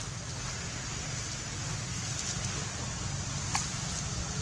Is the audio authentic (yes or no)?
yes